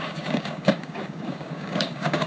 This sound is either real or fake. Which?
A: fake